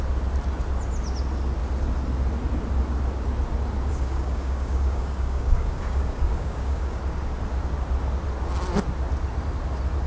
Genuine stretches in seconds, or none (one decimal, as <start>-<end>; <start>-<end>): 0.0-3.9; 7.0-10.1